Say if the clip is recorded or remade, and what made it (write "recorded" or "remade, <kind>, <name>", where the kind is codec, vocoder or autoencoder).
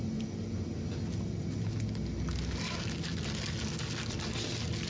recorded